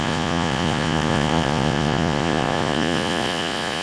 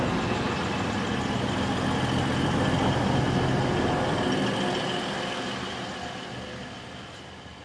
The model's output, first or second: first